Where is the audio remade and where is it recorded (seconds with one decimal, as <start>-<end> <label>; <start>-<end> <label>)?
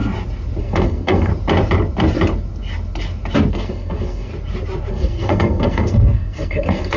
0.0-0.6 recorded; 0.6-1.3 remade; 1.3-3.5 recorded; 3.5-4.3 remade; 4.3-4.9 recorded; 4.9-7.0 remade